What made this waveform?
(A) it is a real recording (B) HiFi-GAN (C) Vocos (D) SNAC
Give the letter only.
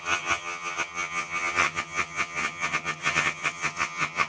B